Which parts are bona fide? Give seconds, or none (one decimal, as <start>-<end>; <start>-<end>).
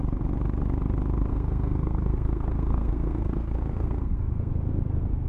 0.0-1.3; 4.5-5.3